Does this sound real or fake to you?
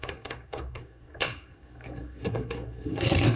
fake